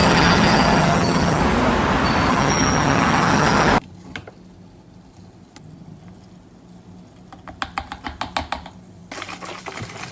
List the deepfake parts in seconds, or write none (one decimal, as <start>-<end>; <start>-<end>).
0.0-1.4; 2.3-3.7